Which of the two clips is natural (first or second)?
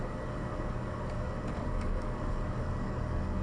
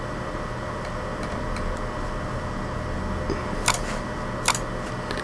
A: second